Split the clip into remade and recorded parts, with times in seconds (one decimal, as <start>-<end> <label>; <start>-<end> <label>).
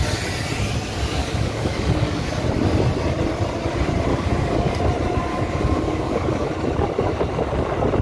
0.0-1.2 recorded; 1.2-2.4 remade; 2.4-4.1 recorded; 4.1-4.8 remade; 4.8-5.3 recorded; 5.3-6.5 remade; 6.5-8.0 recorded